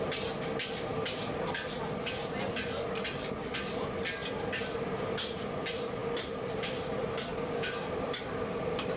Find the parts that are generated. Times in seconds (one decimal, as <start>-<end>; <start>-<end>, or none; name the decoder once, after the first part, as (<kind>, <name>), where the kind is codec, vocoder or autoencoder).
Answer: 6.0-9.0 (vocoder, BigVGAN v2)